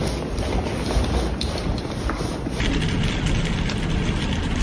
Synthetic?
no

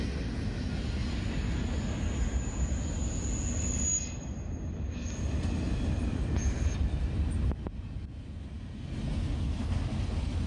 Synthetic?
no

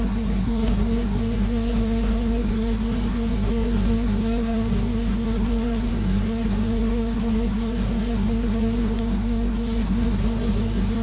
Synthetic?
yes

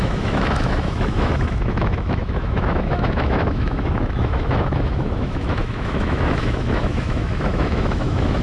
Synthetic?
yes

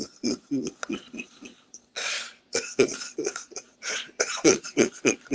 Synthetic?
yes